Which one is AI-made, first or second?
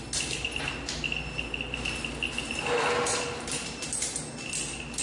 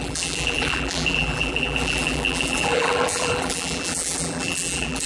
second